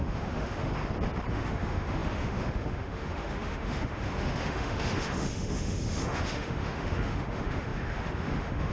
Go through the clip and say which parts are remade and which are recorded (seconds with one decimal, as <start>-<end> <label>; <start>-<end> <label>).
0.0-0.7 remade; 0.7-1.3 recorded; 1.3-8.7 remade